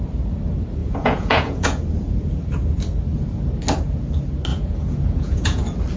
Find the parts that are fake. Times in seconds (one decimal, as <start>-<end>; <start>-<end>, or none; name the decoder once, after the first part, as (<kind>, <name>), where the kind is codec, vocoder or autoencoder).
0.8-1.8 (vocoder, Vocos); 4.5-5.6